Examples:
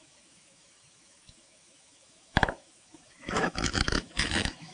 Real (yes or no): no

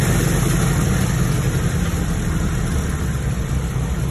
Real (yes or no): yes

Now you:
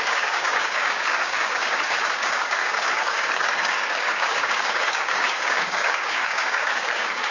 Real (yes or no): no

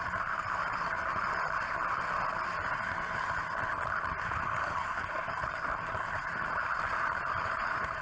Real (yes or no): yes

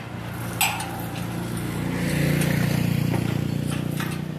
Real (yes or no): yes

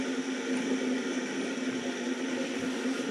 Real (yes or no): yes